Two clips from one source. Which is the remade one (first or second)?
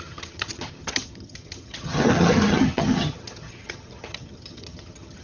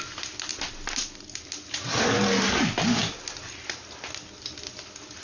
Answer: first